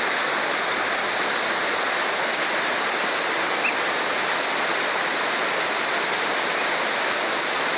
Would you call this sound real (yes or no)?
yes